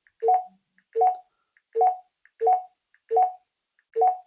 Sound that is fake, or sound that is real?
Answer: real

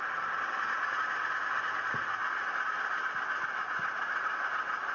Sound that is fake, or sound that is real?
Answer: real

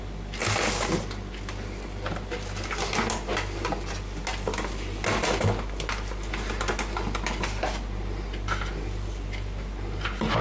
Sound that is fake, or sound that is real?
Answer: real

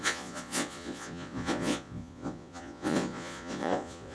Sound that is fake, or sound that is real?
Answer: fake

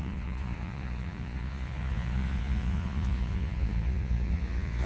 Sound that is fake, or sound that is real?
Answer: fake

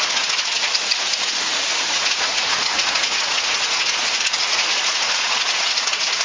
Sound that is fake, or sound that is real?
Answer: fake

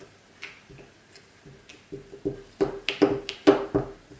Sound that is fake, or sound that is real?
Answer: real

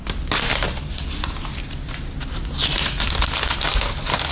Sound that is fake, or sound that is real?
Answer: real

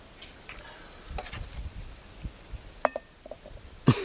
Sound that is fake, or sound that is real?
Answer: real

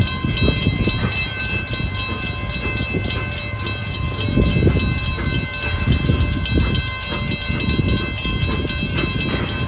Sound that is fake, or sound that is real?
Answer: real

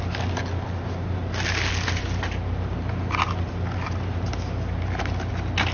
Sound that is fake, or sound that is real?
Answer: real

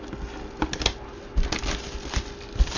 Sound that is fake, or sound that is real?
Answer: real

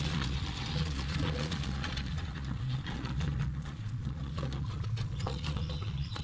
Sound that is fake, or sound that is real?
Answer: fake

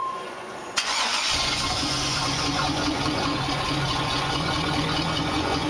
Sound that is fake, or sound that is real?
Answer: fake